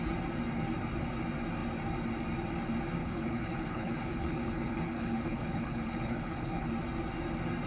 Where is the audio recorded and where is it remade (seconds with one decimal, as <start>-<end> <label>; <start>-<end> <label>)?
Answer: 0.0-3.0 recorded; 3.0-6.7 remade; 6.7-7.7 recorded